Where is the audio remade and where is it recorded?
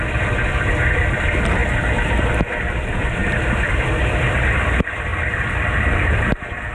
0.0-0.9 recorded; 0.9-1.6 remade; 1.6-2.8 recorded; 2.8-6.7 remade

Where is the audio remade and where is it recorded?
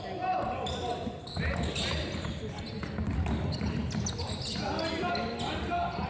0.0-6.1 recorded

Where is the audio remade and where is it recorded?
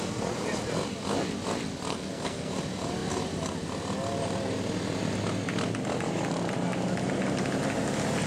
0.0-1.9 recorded; 1.9-2.6 remade; 2.6-8.3 recorded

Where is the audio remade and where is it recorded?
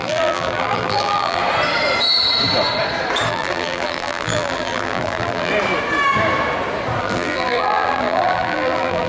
0.0-1.4 remade; 1.4-3.3 recorded; 3.3-5.5 remade; 5.5-7.0 recorded; 7.0-9.1 remade